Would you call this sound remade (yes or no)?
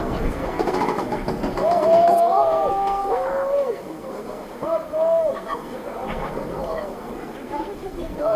yes